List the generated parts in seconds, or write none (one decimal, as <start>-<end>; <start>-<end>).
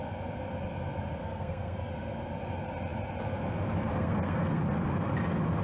1.2-1.9; 3.9-4.6